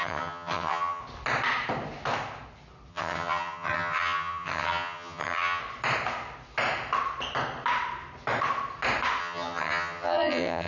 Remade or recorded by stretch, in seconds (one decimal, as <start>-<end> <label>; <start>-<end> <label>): 0.0-1.0 remade; 1.0-2.9 recorded; 2.9-5.6 remade; 5.6-9.2 recorded; 9.2-10.7 remade